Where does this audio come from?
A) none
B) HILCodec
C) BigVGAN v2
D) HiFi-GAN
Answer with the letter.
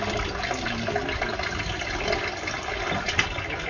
A